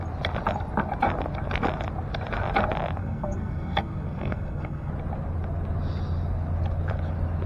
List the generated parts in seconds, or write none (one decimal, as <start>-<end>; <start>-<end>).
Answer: 3.0-4.9

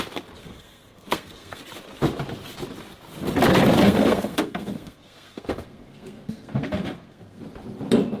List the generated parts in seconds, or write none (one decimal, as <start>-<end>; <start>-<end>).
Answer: 0.4-1.6; 3.8-7.4